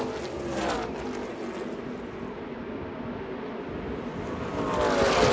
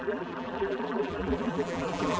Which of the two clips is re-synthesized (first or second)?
second